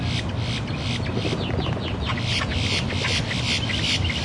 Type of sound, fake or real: real